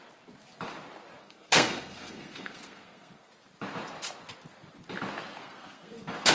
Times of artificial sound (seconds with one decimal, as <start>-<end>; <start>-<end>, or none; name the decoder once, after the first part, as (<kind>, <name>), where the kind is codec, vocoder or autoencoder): 1.2-3.3 (codec, SNAC); 5.4-6.3